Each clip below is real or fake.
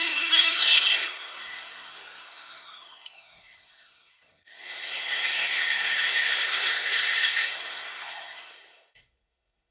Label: fake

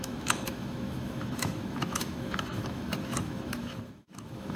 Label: fake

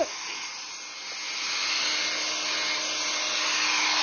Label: real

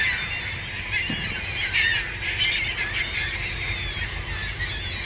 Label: real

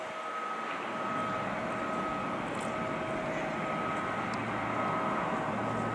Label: real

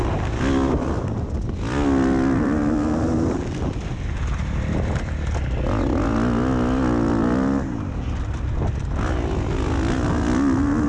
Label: real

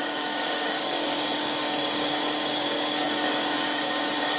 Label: fake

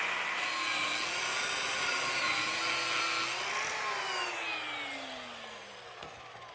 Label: real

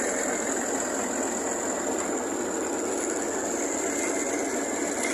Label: real